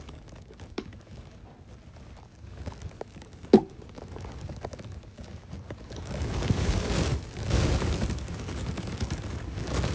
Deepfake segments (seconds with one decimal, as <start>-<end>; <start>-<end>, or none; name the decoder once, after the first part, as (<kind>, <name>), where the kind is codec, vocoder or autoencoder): 0.0-1.4 (codec, DAC); 2.2-9.9